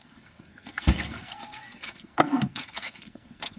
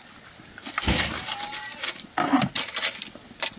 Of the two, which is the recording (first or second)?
second